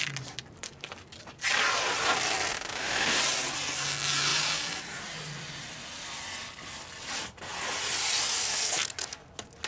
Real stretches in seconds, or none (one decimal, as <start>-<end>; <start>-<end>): 0.0-2.5; 3.2-9.7